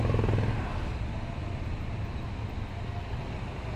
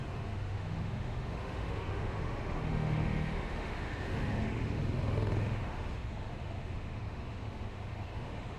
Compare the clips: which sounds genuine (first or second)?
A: first